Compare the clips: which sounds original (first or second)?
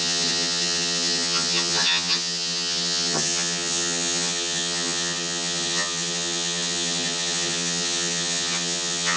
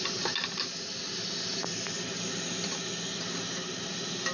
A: second